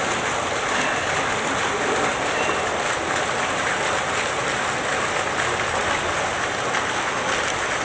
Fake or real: real